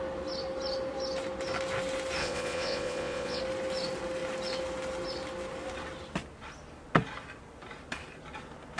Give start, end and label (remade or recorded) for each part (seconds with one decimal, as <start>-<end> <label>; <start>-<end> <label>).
0.0-2.2 recorded; 2.2-3.4 remade; 3.4-8.8 recorded